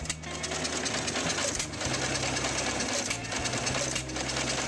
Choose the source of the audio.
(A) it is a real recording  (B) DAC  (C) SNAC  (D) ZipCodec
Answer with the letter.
A